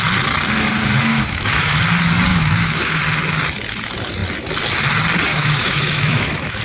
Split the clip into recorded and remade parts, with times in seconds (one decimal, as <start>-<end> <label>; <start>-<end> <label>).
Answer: 0.0-1.1 recorded; 1.1-1.8 remade; 1.8-2.3 recorded; 2.3-3.0 remade; 3.0-5.3 recorded; 5.3-6.6 remade